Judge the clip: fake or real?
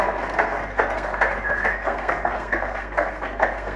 fake